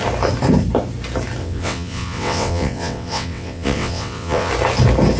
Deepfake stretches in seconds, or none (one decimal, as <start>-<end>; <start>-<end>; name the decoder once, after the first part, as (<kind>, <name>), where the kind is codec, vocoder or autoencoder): 1.4-4.5 (vocoder, WaveNeXt)